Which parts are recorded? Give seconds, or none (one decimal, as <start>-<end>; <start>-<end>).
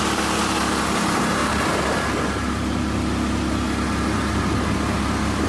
0.0-5.5